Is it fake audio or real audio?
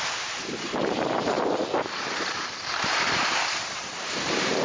fake